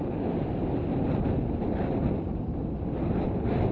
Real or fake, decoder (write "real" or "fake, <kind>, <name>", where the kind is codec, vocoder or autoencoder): real